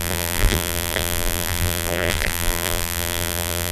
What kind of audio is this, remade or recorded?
remade